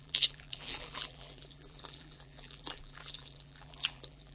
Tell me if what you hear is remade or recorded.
remade